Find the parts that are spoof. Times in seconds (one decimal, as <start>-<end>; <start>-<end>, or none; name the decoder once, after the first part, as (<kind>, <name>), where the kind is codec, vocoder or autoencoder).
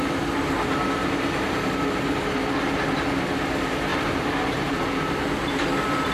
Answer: 3.9-4.8 (vocoder, BigVGAN v2)